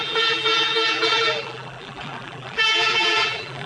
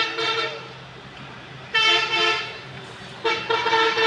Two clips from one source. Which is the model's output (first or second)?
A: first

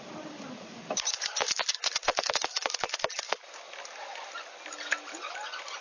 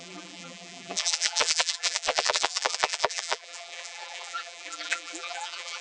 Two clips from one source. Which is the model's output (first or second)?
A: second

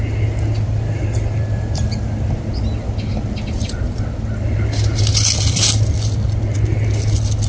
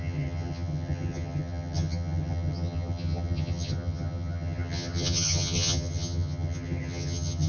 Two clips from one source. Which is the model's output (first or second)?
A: second